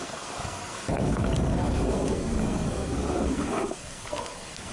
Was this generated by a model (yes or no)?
yes